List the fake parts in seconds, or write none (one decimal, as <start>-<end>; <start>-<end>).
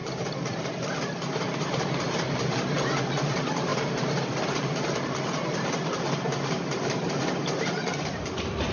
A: 0.0-8.7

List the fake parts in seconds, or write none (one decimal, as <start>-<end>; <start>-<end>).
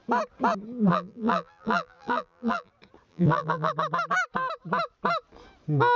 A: 0.9-2.7; 3.1-3.7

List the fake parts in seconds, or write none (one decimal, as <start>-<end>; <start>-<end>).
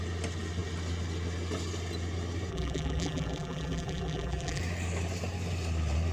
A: 2.5-4.6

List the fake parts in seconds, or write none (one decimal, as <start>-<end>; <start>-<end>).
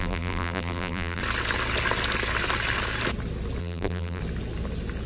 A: 0.0-1.2; 3.6-4.2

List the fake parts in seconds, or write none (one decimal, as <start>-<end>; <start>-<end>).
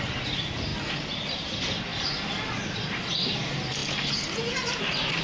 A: 0.0-0.7; 1.3-1.9; 2.8-3.8; 4.5-5.2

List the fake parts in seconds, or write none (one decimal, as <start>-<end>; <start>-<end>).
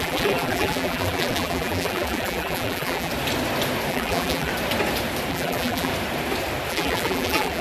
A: 0.0-3.1; 3.9-4.5; 5.3-5.9; 6.7-7.6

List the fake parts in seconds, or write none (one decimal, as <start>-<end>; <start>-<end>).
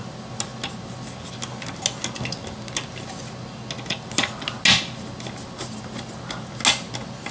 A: none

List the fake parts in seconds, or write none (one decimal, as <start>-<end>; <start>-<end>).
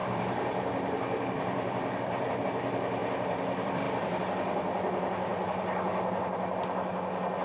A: 0.0-2.4; 3.0-4.2